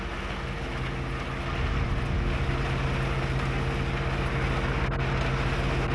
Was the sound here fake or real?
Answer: real